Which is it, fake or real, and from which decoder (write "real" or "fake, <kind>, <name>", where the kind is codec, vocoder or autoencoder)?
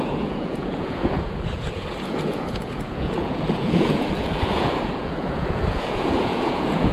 fake, vocoder, Vocos